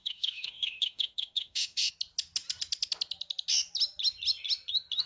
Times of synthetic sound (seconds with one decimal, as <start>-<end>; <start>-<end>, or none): 0.0-1.9